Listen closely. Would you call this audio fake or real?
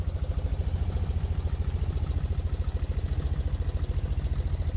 real